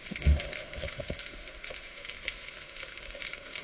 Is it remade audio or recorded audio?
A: remade